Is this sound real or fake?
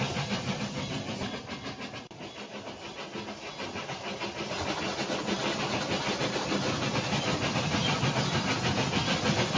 real